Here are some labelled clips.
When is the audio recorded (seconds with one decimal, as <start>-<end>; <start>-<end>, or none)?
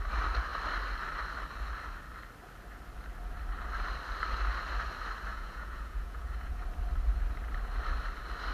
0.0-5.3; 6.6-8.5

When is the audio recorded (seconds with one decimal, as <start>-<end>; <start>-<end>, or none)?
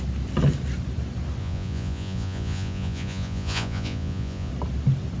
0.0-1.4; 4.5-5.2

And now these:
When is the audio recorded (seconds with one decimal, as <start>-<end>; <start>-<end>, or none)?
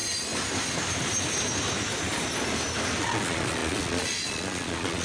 0.0-3.0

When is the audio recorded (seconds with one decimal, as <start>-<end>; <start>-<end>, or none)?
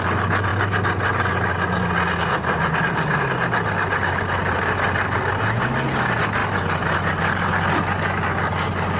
0.0-9.0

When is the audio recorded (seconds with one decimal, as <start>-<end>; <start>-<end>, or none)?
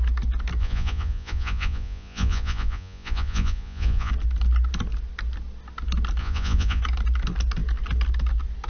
0.0-0.6; 4.1-6.2; 6.8-8.7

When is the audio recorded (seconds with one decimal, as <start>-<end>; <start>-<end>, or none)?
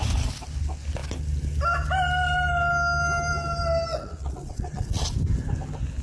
0.0-3.9; 5.1-6.0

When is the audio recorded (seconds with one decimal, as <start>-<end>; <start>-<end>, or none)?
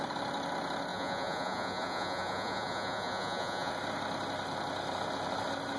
0.0-0.9; 3.7-5.8